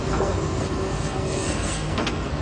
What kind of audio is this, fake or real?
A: fake